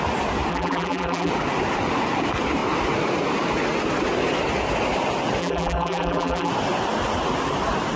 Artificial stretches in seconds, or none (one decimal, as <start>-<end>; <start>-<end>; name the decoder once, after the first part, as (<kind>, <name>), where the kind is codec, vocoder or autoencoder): 0.5-1.3 (vocoder, BigVGAN v2); 5.4-6.5